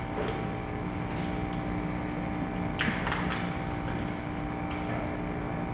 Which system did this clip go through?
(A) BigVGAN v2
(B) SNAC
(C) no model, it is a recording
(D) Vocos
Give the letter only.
C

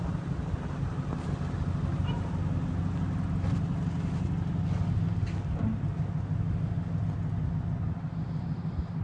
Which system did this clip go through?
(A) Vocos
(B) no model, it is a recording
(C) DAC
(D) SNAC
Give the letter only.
B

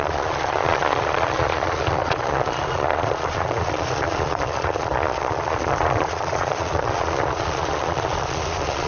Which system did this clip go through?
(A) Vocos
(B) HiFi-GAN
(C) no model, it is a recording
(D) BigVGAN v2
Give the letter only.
A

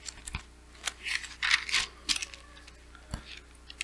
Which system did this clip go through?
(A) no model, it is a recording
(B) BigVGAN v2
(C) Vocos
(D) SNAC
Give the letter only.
A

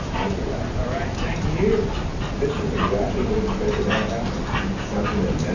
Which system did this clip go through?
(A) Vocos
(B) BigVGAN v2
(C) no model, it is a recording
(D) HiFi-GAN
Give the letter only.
C